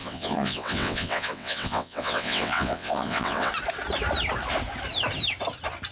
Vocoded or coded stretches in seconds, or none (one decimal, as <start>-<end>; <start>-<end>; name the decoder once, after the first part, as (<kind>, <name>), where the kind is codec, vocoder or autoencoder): 0.0-3.5 (vocoder, WaveNeXt)